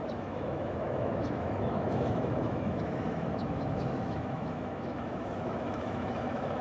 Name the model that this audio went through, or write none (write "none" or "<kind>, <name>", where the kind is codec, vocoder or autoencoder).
autoencoder, DAC-VAE